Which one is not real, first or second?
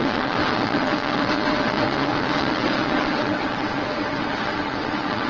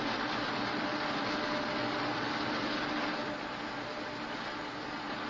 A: first